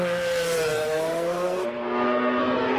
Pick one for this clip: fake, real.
fake